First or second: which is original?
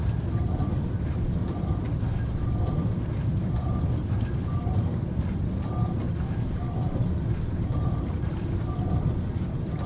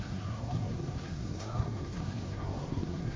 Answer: first